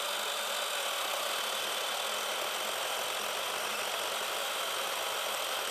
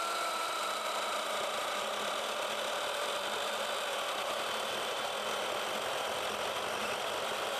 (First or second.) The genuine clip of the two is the first